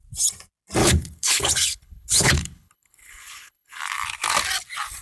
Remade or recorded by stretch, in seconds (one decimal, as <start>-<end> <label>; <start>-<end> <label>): 0.0-0.8 recorded; 0.8-3.8 remade; 3.8-5.0 recorded